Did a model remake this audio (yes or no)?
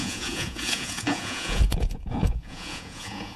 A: yes